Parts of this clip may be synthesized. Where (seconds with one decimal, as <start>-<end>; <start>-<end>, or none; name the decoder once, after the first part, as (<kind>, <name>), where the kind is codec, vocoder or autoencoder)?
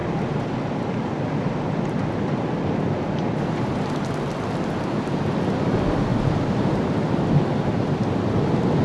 4.8-8.8 (vocoder, BigVGAN v2)